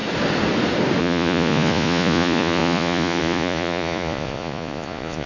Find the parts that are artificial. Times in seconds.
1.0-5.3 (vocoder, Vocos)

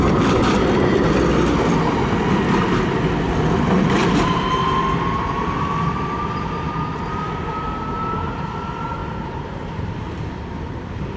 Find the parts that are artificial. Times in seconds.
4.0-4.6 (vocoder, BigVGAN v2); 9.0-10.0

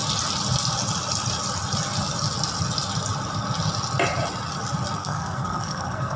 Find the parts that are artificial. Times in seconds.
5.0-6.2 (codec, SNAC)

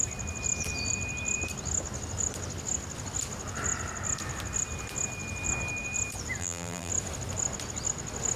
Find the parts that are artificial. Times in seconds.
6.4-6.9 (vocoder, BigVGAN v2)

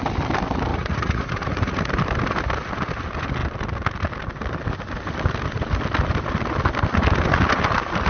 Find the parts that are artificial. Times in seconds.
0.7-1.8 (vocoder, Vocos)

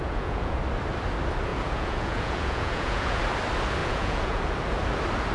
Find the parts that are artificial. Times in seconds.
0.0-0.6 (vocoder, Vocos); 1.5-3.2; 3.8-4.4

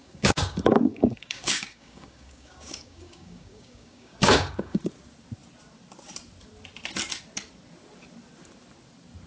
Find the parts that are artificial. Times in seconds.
0.0-4.8 (codec, DAC)